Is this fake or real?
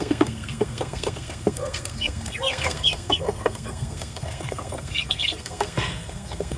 fake